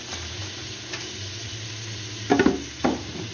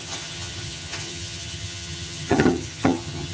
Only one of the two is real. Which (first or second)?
first